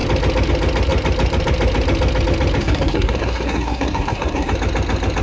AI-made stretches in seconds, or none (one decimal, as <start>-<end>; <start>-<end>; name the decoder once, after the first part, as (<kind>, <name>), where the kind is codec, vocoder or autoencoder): 2.6-4.5 (codec, SNAC)